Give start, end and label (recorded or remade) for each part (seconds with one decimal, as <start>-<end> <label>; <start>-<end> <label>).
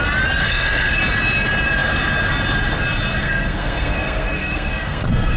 0.0-0.4 recorded; 0.4-1.0 remade; 1.0-3.2 recorded; 3.2-5.4 remade